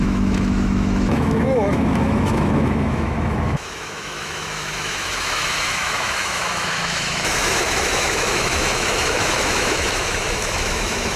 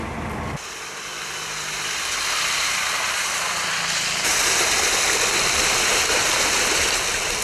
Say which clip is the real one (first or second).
second